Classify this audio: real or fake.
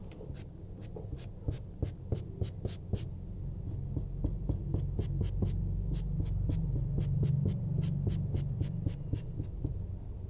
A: real